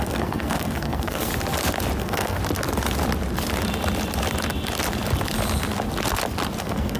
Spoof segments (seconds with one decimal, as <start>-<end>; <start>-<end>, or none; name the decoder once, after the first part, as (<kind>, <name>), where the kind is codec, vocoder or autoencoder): 0.0-1.3 (codec, SNAC); 2.0-2.4; 6.6-7.0